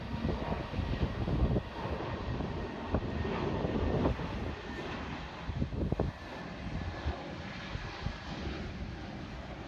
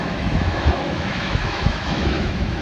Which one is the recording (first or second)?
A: first